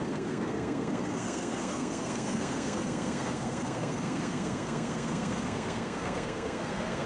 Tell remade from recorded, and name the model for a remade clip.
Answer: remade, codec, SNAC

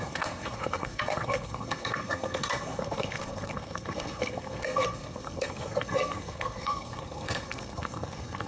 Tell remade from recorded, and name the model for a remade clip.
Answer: remade, codec, SNAC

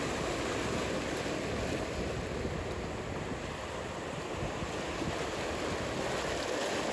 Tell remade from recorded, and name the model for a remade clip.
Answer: recorded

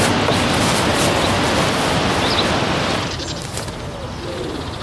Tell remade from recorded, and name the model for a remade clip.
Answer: recorded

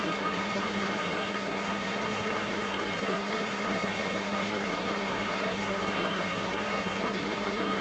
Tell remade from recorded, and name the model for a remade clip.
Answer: remade, codec, SNAC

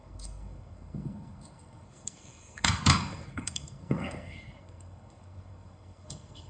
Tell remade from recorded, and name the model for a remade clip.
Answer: remade, codec, SNAC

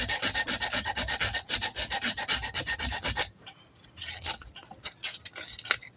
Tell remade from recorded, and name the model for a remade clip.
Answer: recorded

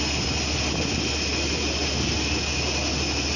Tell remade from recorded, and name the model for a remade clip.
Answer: recorded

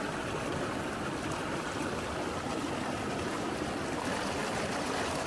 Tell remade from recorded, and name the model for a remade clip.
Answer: recorded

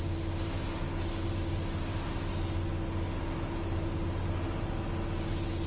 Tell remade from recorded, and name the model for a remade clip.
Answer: recorded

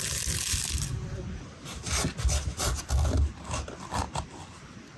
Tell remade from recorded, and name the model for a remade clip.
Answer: recorded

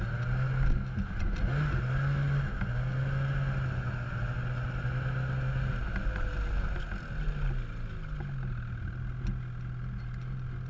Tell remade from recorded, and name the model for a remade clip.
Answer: recorded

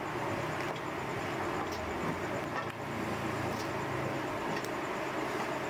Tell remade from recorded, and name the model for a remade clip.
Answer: recorded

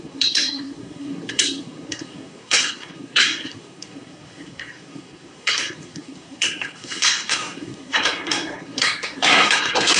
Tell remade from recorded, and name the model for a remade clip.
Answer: remade, codec, SNAC